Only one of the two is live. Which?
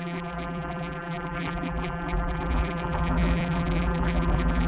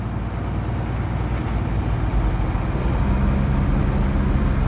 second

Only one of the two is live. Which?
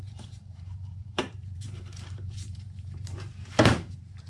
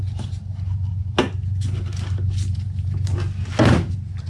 second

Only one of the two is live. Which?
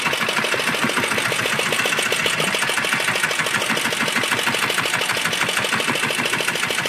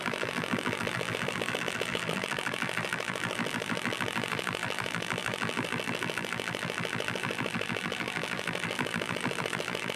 first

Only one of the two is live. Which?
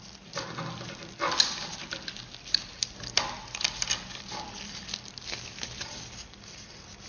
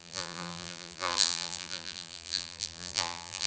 first